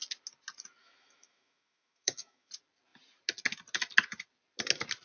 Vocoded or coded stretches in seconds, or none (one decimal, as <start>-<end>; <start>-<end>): 0.8-2.5

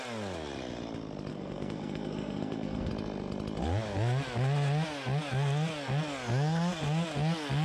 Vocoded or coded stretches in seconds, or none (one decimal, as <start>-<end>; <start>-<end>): 1.3-2.9